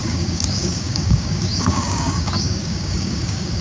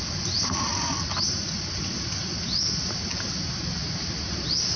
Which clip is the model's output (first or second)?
first